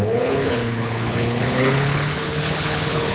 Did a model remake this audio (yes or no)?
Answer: yes